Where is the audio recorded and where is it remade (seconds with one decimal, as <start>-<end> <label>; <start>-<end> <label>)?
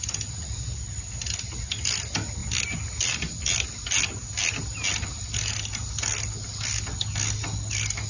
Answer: 0.0-8.1 recorded